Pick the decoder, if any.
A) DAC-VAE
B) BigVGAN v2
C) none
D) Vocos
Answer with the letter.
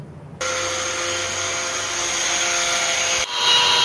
C